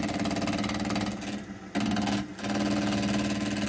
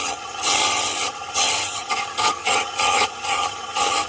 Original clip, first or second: first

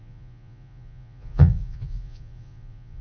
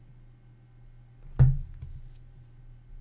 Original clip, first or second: second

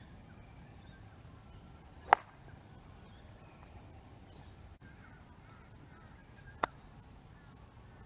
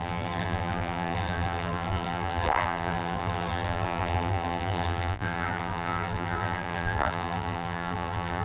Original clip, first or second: first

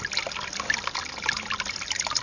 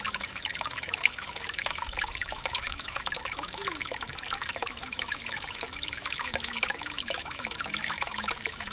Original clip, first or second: first